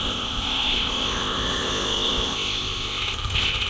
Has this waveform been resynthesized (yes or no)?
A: yes